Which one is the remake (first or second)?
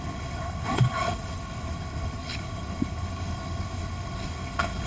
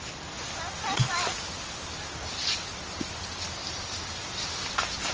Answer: first